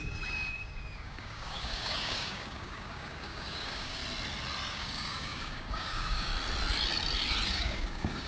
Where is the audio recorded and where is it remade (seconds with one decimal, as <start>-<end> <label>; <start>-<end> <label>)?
0.0-4.0 remade; 4.0-4.7 recorded; 4.7-6.3 remade; 6.3-7.5 recorded; 7.5-8.3 remade